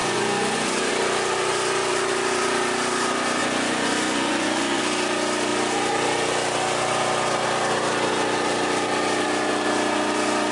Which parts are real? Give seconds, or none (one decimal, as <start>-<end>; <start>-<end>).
0.9-3.4; 4.8-10.5